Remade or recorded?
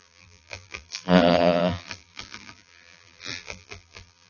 remade